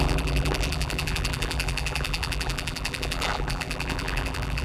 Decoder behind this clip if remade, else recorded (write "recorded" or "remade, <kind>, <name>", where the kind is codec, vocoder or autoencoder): remade, vocoder, BigVGAN v2